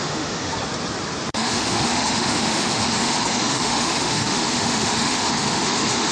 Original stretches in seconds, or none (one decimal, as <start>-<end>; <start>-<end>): 0.5-1.3